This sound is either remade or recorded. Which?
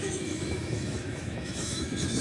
remade